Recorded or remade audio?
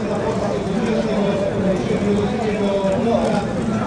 recorded